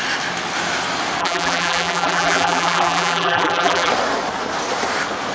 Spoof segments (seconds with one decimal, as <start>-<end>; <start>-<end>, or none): 1.2-3.9